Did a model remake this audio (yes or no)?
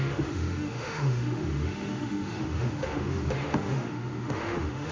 yes